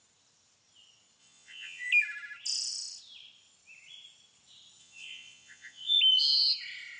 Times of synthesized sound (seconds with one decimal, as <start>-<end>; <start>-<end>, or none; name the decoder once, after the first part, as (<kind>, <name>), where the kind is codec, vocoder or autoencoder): 1.2-1.9 (vocoder, Vocos); 4.8-6.0

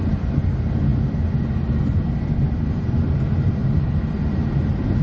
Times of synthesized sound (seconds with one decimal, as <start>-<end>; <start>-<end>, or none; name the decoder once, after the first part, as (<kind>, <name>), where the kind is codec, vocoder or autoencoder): none